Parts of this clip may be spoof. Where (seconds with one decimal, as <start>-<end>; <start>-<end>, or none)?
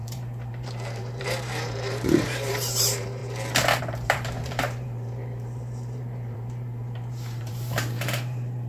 0.0-3.2; 3.8-8.7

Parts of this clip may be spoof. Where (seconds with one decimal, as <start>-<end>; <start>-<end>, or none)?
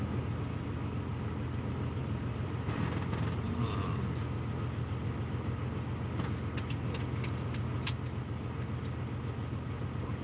2.0-3.5